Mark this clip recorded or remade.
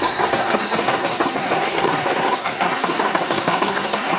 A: remade